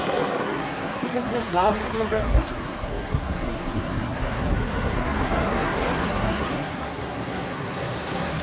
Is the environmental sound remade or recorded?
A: remade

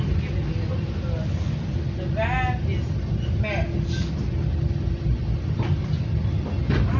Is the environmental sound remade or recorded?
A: recorded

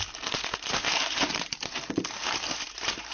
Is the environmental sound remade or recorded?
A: remade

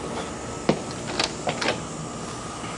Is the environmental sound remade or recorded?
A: recorded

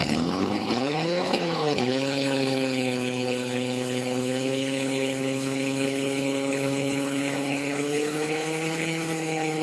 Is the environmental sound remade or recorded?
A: remade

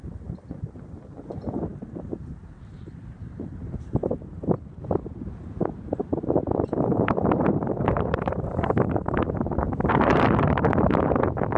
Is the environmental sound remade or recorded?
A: remade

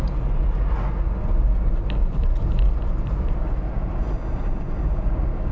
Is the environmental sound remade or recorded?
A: recorded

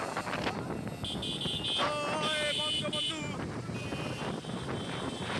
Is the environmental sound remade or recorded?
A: recorded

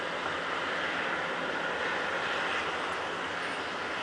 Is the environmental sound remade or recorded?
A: recorded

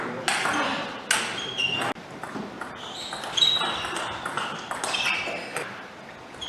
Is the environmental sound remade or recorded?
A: recorded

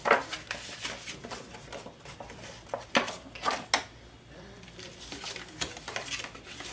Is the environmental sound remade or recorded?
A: recorded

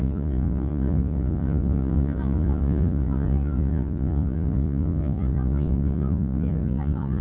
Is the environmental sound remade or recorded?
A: remade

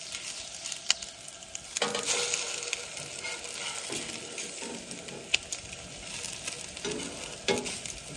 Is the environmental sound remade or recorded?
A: recorded